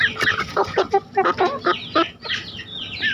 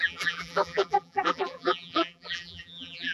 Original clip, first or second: first